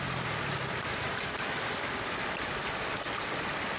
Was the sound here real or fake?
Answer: fake